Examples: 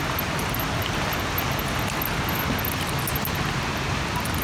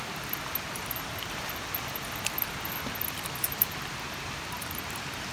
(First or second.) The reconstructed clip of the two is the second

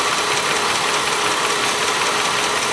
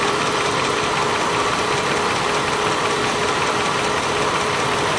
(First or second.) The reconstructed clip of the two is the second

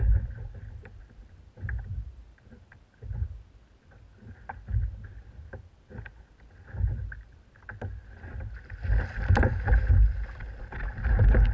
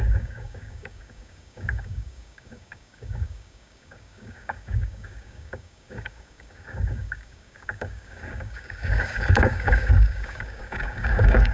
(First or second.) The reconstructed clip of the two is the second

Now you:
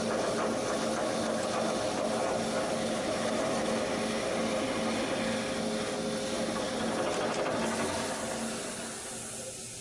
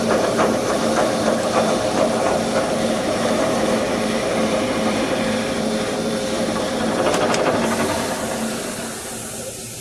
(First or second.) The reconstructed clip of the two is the second